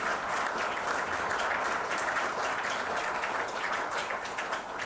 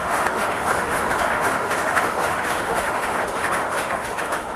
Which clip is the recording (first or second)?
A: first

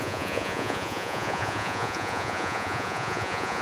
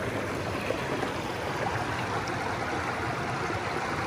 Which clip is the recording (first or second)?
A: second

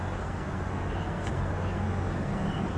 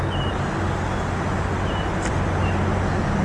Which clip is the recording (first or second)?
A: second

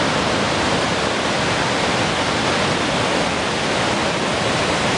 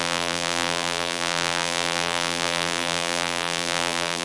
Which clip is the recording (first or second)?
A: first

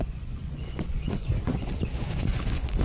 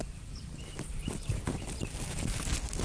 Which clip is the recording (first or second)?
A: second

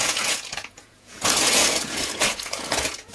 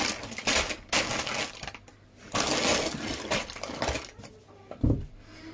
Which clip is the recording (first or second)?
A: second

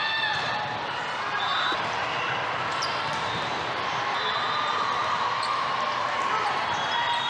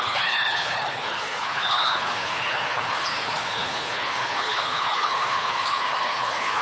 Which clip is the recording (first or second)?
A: first